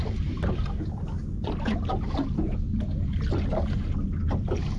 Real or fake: real